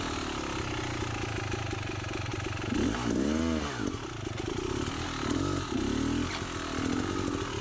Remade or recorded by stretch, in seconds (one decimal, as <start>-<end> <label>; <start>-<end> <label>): 0.0-7.6 recorded